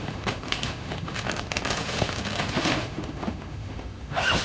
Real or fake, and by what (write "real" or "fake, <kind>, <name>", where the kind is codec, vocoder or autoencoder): fake, autoencoder, DAC-VAE